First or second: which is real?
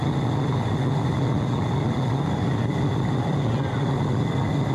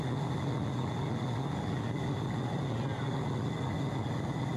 second